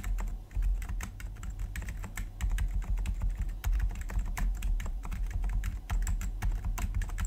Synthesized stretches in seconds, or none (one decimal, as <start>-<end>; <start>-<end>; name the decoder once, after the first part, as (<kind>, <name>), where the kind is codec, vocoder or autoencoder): 0.7-1.4 (vocoder, BigVGAN v2); 3.6-5.6